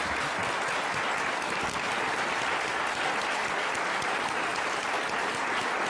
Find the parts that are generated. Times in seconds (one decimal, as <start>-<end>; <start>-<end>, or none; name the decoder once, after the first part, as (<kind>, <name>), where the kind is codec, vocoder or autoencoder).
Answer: 2.7-3.8 (vocoder, BigVGAN v2); 4.5-5.3